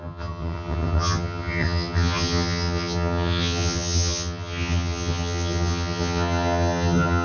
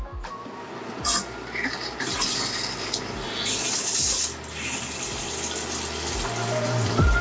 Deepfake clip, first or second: first